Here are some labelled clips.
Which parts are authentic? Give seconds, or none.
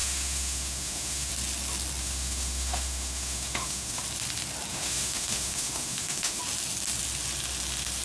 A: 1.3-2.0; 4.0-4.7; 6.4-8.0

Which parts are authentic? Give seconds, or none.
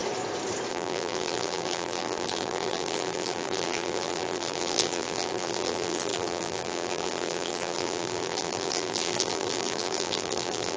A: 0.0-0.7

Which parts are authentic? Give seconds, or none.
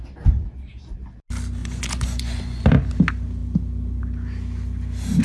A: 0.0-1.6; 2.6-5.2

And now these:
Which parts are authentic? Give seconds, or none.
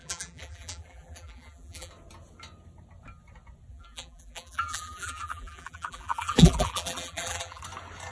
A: 1.9-3.7; 7.6-8.1